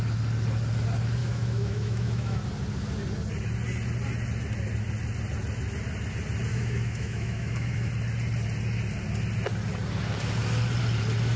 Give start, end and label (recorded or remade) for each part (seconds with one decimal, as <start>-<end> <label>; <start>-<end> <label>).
0.0-1.2 recorded; 1.2-2.4 remade; 2.4-6.5 recorded; 6.5-7.9 remade; 7.9-11.4 recorded

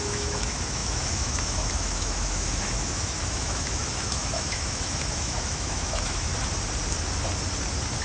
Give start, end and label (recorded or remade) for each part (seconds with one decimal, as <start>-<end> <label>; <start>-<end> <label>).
0.0-6.3 remade; 6.3-8.0 recorded

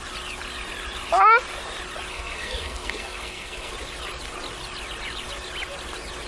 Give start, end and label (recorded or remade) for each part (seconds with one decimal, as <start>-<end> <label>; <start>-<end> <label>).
0.0-2.1 recorded; 2.1-3.7 remade; 3.7-6.3 recorded

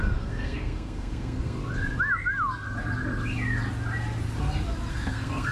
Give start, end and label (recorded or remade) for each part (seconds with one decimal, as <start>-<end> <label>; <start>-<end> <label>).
0.0-1.6 remade; 1.6-4.9 recorded; 4.9-5.5 remade

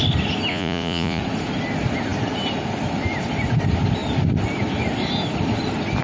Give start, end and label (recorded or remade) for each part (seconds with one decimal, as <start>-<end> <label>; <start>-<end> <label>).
0.0-0.5 recorded; 0.5-1.2 remade; 1.2-6.0 recorded

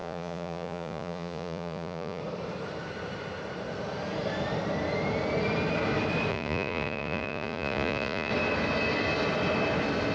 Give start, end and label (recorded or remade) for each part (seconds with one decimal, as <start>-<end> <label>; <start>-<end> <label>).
0.0-2.2 remade; 2.2-6.3 recorded; 6.3-8.3 remade; 8.3-10.1 recorded

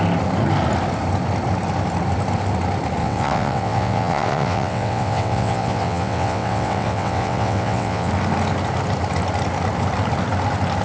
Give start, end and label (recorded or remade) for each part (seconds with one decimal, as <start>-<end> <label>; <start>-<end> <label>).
0.0-3.0 recorded; 3.0-8.1 remade; 8.1-10.8 recorded